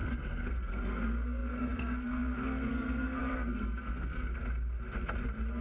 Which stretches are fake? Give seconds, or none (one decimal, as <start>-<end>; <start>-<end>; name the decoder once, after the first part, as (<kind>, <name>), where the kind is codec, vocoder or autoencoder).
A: 0.0-4.3 (codec, SNAC)